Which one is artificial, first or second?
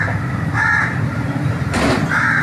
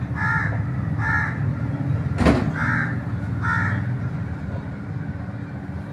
first